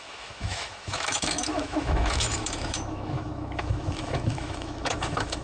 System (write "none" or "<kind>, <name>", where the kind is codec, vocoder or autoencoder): autoencoder, DAC-VAE